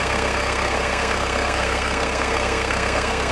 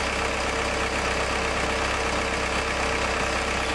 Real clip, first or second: second